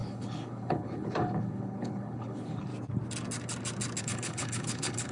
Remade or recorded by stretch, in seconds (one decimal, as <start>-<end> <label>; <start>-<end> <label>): 0.0-2.7 remade; 2.7-4.0 recorded; 4.0-5.1 remade